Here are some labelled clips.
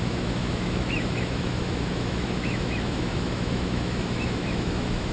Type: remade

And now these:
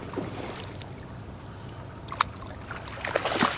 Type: recorded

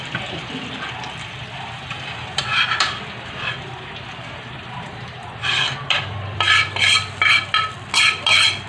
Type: remade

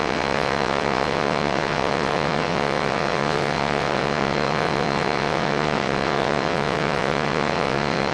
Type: remade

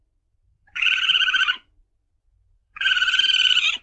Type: remade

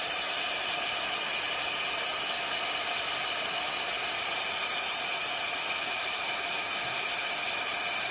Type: recorded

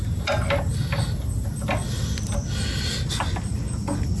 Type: recorded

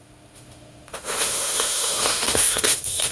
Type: remade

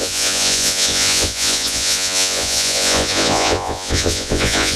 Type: remade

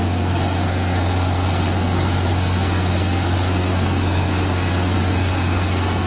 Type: remade